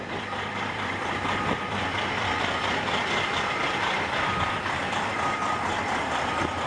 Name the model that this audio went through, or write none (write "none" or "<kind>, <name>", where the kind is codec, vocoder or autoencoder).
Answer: vocoder, BigVGAN v2